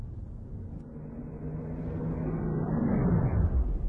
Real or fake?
real